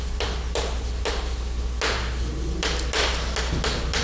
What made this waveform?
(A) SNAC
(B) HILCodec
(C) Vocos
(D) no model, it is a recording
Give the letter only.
D